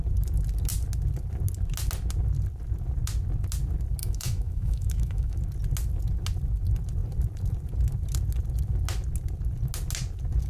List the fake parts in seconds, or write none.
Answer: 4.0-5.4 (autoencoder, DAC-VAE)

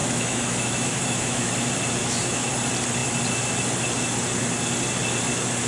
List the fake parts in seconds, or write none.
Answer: 0.0-1.5 (autoencoder, DAC-VAE); 2.0-2.5

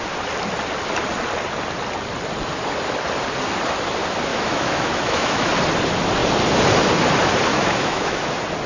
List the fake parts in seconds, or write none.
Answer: 4.3-5.5 (autoencoder, DAC-VAE); 7.5-8.2

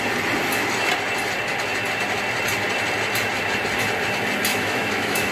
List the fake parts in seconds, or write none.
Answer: 4.5-5.3 (autoencoder, DAC-VAE)

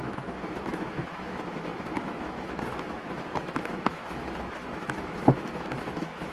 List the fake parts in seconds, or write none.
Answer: 0.0-6.3 (autoencoder, DAC-VAE)

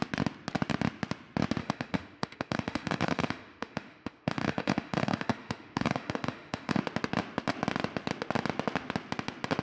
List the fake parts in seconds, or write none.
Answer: 1.6-6.8 (autoencoder, DAC-VAE)